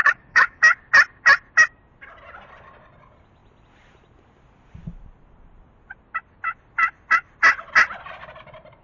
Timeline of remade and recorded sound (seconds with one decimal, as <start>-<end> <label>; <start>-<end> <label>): 0.0-0.6 remade; 0.6-8.8 recorded